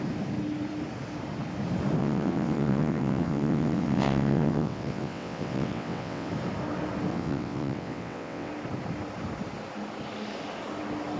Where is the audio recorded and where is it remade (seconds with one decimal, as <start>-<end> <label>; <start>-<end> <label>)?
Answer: 0.0-2.0 recorded; 2.0-6.3 remade; 6.3-7.1 recorded; 7.1-8.5 remade; 8.5-11.2 recorded